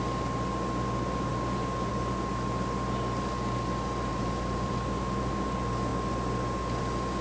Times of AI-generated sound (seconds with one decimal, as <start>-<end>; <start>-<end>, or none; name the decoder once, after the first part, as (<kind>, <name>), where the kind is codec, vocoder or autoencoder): 4.1-5.3 (vocoder, BigVGAN v2)